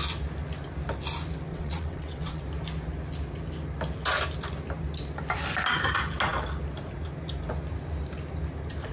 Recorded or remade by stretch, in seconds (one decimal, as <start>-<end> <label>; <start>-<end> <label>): 0.0-1.5 recorded; 1.5-2.4 remade; 2.4-8.9 recorded